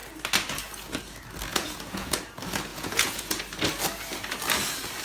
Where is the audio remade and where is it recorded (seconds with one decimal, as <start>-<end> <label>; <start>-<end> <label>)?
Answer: 0.0-1.5 recorded; 1.5-2.2 remade; 2.2-2.7 recorded; 2.7-3.4 remade; 3.4-5.0 recorded